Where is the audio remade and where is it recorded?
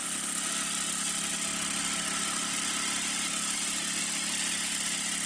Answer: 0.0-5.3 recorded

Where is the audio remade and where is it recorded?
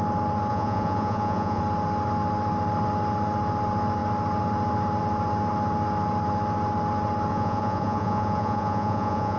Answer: 0.0-0.5 recorded; 0.5-1.6 remade; 1.6-7.3 recorded; 7.3-9.4 remade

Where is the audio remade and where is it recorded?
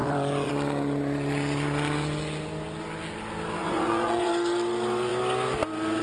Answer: 0.0-0.5 remade; 0.5-3.6 recorded; 3.6-4.3 remade; 4.3-6.0 recorded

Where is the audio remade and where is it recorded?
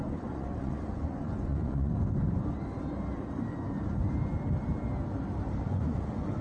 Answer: 0.0-1.9 remade; 1.9-5.7 recorded; 5.7-6.4 remade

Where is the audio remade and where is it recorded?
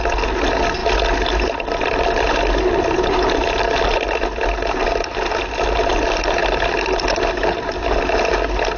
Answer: 0.0-8.8 recorded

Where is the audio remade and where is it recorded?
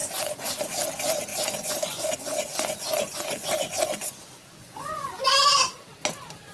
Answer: 0.0-0.6 remade; 0.6-1.3 recorded; 1.3-5.2 remade; 5.2-6.5 recorded